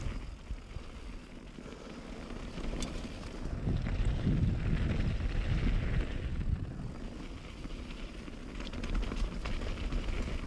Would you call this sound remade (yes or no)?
no